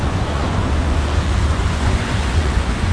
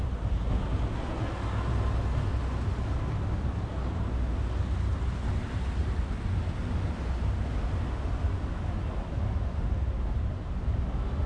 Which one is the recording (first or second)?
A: second